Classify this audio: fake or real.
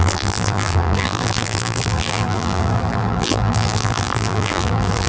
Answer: fake